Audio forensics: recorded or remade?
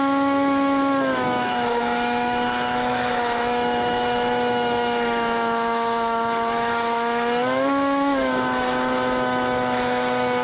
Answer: remade